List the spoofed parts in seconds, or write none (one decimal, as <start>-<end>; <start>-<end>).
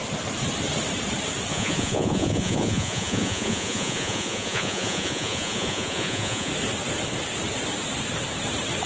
1.5-6.5